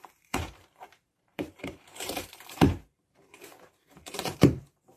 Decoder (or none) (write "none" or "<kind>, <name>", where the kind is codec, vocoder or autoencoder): vocoder, BigVGAN v2